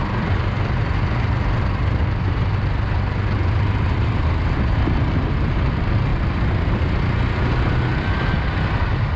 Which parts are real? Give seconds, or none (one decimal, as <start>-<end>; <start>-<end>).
0.0-3.4; 4.2-9.2